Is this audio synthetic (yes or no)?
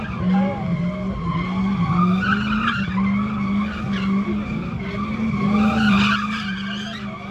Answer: no